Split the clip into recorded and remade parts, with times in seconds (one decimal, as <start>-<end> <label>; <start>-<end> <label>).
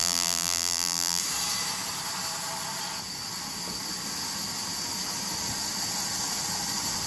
0.0-1.2 remade; 1.2-7.1 recorded